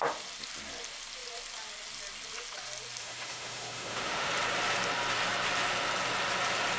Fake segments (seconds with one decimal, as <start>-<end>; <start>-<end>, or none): 3.0-4.3